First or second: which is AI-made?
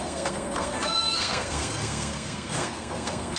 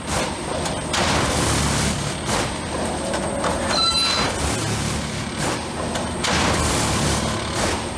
first